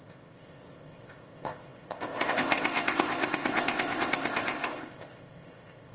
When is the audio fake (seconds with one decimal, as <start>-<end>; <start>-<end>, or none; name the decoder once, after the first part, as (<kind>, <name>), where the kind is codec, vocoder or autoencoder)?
0.0-5.9 (codec, ZipCodec)